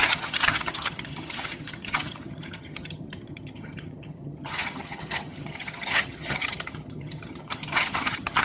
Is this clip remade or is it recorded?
remade